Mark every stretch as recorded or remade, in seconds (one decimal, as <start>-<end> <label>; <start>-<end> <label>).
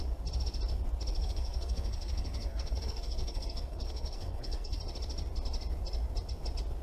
0.0-1.2 recorded; 1.2-4.8 remade; 4.8-6.8 recorded